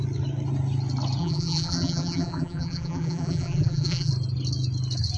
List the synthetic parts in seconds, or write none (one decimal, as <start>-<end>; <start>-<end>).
1.2-4.1